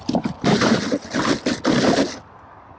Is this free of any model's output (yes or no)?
yes